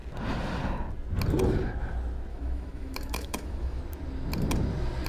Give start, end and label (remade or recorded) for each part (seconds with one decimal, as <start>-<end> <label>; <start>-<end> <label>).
0.0-2.3 recorded; 2.3-3.8 remade; 3.8-5.1 recorded